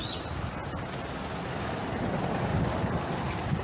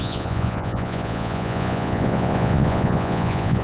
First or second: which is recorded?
first